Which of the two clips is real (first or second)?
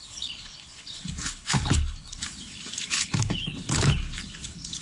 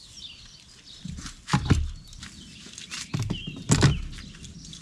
second